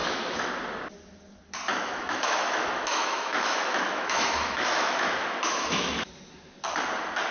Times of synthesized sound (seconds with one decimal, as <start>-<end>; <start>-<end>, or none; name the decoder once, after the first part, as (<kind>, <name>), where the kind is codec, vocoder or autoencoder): 0.0-0.5 (autoencoder, DAC-VAE); 1.7-6.1